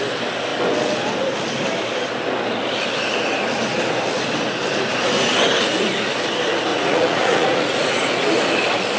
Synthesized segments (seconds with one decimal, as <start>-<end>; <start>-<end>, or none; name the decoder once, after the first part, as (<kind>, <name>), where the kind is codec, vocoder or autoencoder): 6.7-8.1 (vocoder, Vocos)